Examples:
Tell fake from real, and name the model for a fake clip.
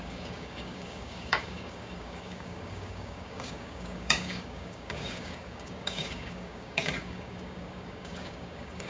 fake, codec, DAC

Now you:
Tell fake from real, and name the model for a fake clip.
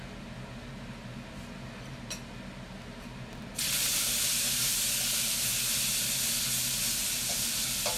real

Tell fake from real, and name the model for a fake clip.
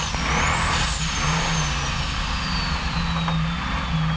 real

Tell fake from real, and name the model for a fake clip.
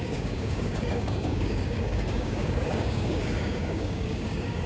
fake, codec, DAC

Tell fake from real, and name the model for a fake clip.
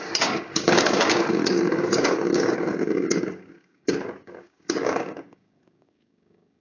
fake, codec, DAC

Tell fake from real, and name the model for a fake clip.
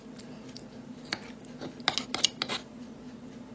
real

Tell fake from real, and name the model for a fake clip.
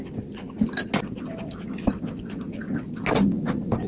real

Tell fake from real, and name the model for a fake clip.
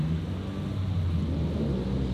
real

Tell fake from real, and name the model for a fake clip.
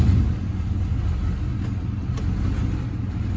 real